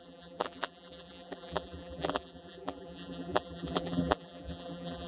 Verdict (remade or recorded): remade